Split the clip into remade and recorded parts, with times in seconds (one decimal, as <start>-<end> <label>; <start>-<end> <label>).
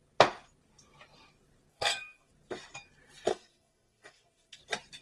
0.0-1.7 recorded; 1.7-2.3 remade; 2.3-3.3 recorded; 3.3-4.6 remade; 4.6-5.0 recorded